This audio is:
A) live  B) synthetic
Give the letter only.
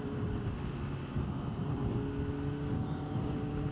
A